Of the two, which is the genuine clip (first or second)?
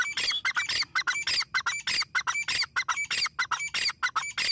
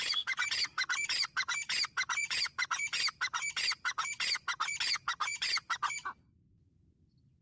first